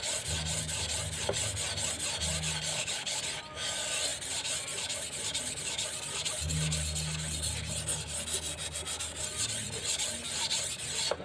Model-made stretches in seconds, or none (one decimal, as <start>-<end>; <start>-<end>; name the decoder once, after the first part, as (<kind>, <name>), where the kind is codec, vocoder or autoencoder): 2.7-3.2 (codec, HILCodec)